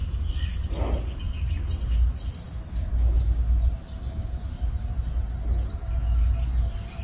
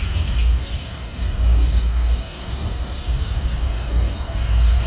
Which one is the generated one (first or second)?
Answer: second